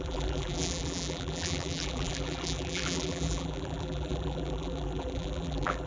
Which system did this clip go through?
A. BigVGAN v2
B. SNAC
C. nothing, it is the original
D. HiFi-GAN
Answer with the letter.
A